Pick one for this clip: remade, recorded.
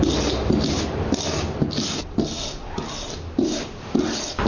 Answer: recorded